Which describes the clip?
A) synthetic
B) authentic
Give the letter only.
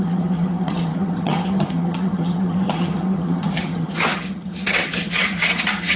A